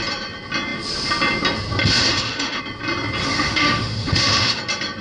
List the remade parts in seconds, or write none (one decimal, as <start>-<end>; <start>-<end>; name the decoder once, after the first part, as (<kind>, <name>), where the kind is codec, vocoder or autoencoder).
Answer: 1.8-2.6 (autoencoder, DAC-VAE); 3.2-4.6